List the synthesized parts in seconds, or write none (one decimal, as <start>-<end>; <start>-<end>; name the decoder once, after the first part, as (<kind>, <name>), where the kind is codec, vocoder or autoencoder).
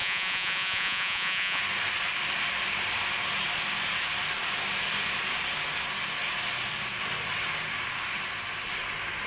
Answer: 0.0-1.6 (vocoder, Vocos)